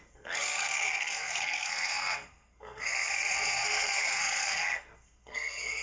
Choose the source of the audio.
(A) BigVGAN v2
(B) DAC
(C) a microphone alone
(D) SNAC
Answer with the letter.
D